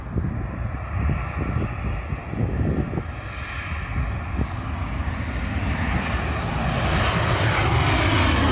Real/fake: real